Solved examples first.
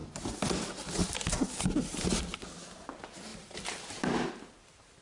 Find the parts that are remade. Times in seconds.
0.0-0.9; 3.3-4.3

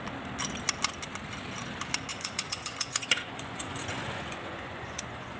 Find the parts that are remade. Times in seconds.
2.1-5.4

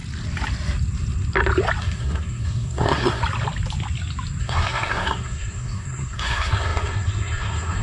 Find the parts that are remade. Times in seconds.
1.8-3.2; 4.4-7.8